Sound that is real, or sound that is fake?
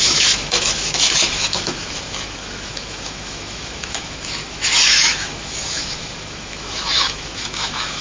fake